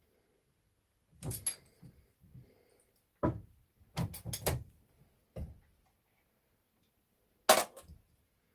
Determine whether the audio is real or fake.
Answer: real